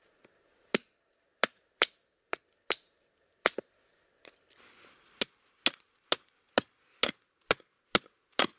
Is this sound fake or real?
real